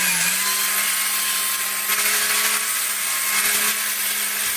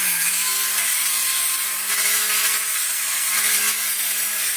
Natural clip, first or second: first